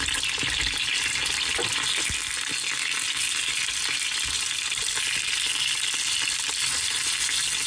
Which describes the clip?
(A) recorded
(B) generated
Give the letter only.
A